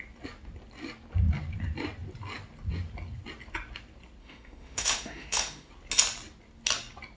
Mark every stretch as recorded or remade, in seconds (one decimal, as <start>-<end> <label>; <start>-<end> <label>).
0.0-4.2 recorded; 4.2-5.7 remade; 5.7-7.2 recorded